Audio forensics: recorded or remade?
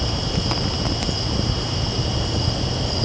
recorded